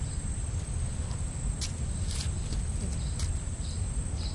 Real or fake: real